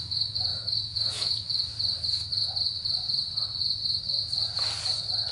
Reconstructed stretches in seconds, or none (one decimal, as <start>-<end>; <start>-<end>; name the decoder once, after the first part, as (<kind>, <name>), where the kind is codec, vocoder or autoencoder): 0.0-1.7 (autoencoder, DAC-VAE)